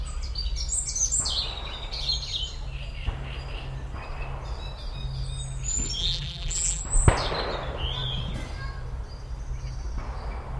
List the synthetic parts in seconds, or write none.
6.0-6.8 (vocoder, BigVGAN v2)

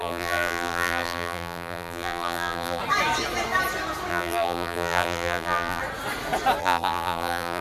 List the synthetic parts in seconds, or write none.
0.0-2.8 (vocoder, BigVGAN v2); 4.1-5.8; 6.6-7.6

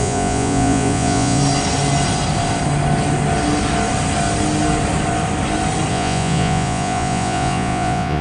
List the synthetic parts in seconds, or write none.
0.0-1.4 (vocoder, Vocos); 5.9-8.2

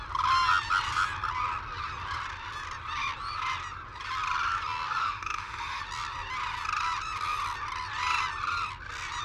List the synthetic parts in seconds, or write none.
5.0-5.8 (autoencoder, DAC-VAE)

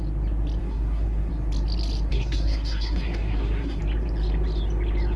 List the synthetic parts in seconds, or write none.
0.6-1.3 (codec, SNAC); 2.1-3.8

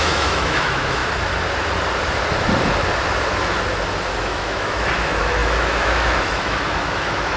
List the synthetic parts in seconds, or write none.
0.0-1.0 (autoencoder, DAC-VAE); 4.2-7.4

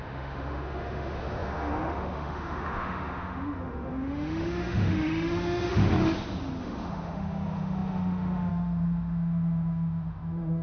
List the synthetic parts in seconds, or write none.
0.0-5.9 (autoencoder, DAC-VAE); 6.6-10.6